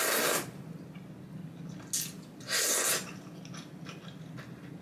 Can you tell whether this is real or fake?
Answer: real